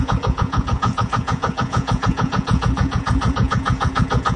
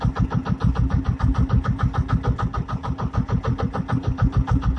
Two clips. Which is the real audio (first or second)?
second